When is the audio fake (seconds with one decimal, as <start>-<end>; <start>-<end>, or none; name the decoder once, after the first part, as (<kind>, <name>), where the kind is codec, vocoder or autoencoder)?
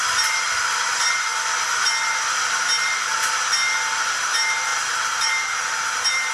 0.0-1.3 (vocoder, BigVGAN v2); 4.2-6.3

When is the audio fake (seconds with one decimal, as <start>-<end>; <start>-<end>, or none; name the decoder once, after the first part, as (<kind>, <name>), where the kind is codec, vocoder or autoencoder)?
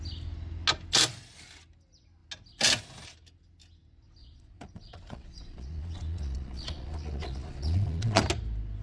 4.2-8.2 (vocoder, Vocos)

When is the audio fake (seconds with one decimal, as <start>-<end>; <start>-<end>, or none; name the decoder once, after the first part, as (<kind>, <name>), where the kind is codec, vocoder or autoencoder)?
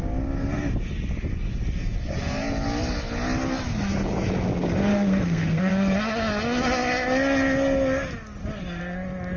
4.9-5.7 (codec, SNAC)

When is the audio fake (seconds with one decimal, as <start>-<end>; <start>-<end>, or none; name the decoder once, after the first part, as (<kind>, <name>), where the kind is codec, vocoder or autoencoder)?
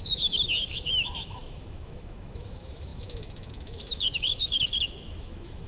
0.0-5.7 (autoencoder, DAC-VAE)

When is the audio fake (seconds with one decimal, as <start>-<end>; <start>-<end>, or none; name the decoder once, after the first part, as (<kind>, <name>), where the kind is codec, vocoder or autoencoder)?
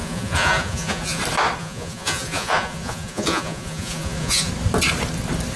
0.0-1.2 (vocoder, Vocos); 1.6-4.5